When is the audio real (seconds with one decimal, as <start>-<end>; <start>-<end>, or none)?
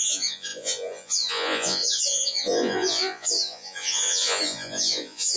none